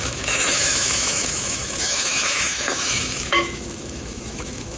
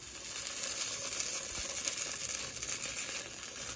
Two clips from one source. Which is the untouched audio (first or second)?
second